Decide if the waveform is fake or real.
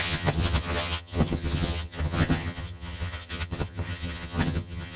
fake